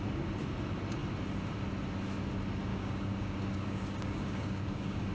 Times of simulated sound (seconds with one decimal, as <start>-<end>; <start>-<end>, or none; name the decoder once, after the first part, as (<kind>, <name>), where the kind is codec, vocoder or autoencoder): 2.7-5.1 (codec, DAC)